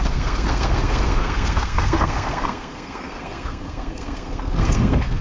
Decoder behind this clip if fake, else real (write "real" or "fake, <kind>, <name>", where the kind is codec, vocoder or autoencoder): fake, codec, SNAC